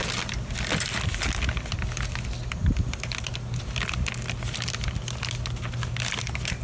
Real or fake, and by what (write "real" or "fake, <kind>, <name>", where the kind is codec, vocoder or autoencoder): real